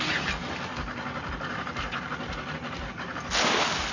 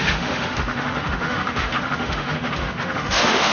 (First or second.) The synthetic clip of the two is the second